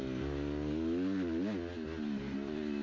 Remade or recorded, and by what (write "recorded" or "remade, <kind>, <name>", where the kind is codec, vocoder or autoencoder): recorded